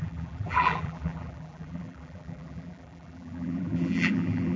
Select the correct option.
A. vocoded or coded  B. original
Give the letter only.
A